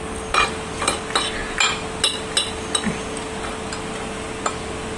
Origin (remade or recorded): recorded